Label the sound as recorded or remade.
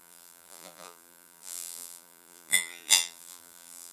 remade